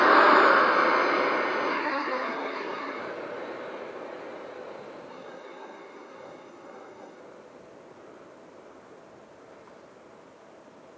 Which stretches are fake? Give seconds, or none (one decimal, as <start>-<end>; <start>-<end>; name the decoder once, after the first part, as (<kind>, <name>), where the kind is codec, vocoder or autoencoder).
1.7-3.0 (codec, SNAC); 5.1-7.2